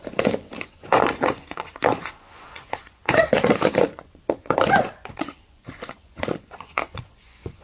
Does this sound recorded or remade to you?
remade